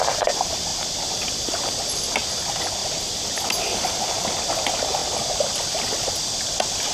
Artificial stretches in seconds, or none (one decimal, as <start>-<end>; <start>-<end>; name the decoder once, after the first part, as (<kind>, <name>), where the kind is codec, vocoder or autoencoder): 2.8-3.9 (vocoder, BigVGAN v2)